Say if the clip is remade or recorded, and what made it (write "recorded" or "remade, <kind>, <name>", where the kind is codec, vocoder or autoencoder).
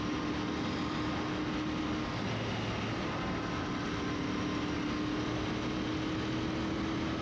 recorded